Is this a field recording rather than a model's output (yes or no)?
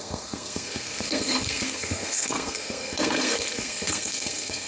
no